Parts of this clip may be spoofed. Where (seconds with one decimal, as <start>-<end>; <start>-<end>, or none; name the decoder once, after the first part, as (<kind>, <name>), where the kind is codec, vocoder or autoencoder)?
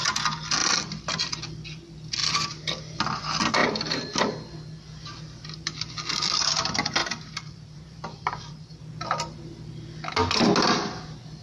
0.6-1.3 (vocoder, BigVGAN v2); 2.2-2.8; 3.6-4.3; 7.0-8.8